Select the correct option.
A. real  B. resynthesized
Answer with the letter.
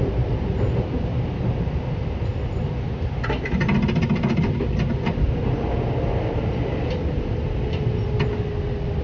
A